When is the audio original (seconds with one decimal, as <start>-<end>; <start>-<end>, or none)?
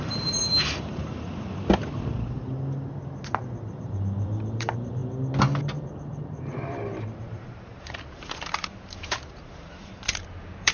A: 1.3-3.8; 5.0-6.1